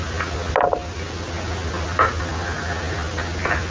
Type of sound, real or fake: real